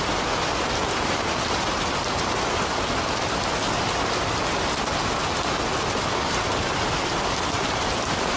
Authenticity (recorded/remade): recorded